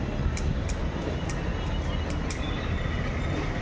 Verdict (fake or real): real